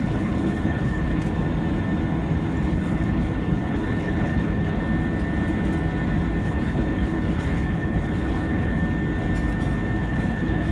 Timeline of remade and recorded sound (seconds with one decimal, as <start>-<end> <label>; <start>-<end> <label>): 0.0-1.2 remade; 1.2-2.7 recorded; 2.7-4.8 remade; 4.8-6.4 recorded; 6.4-8.8 remade; 8.8-10.0 recorded; 10.0-10.7 remade